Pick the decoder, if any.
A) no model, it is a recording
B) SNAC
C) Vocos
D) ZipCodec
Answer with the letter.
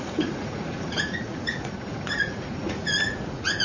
C